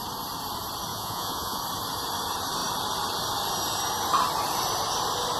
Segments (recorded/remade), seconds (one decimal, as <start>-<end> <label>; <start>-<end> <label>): 0.0-0.9 recorded; 0.9-1.6 remade; 1.6-5.4 recorded